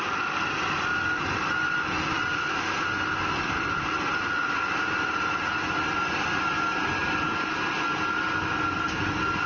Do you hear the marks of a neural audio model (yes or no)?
no